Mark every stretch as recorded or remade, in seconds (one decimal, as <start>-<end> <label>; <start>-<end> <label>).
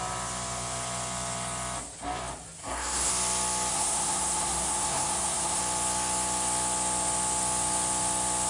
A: 0.0-2.6 recorded; 2.6-3.1 remade; 3.1-3.7 recorded; 3.7-5.6 remade; 5.6-8.5 recorded